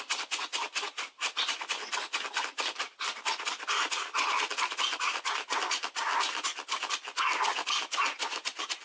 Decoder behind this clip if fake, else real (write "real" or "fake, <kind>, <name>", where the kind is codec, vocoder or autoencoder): real